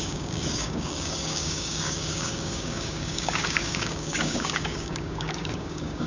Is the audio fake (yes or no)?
yes